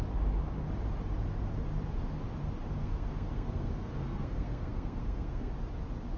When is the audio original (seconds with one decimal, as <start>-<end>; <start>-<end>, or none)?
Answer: 0.0-2.8; 5.5-6.2